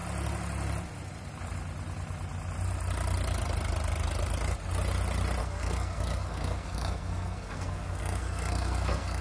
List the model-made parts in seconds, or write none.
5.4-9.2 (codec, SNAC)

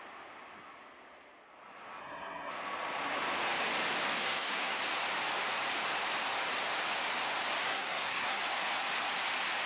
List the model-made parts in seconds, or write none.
2.0-2.5 (codec, SNAC); 4.2-4.8; 7.6-8.4

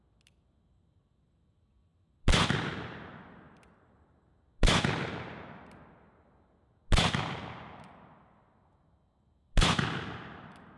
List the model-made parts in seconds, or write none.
none

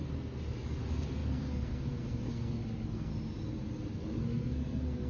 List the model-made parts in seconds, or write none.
0.0-3.1 (codec, SNAC); 3.9-5.1

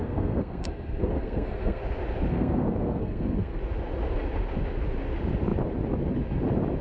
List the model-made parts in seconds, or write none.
0.0-1.8 (codec, SNAC); 2.3-3.6

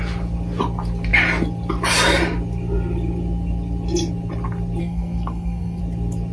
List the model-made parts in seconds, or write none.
4.8-5.8 (codec, SNAC)

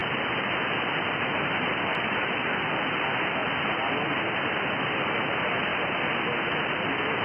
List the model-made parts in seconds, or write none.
none

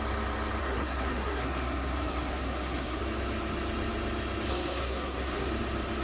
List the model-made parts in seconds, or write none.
0.6-3.0 (codec, SNAC); 4.5-5.5